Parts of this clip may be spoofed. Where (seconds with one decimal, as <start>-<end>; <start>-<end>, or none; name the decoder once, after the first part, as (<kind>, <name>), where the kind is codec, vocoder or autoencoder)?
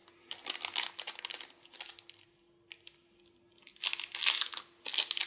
none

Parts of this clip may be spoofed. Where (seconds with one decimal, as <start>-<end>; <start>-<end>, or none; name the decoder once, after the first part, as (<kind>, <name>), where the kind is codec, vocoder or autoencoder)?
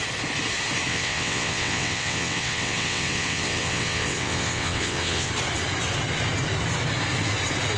0.9-5.3 (vocoder, WaveNeXt)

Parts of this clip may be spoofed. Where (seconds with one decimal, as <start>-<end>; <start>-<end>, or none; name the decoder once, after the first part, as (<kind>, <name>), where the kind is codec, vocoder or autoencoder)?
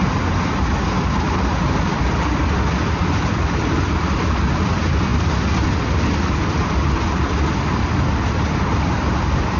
1.5-4.5 (vocoder, BigVGAN v2); 5.1-7.8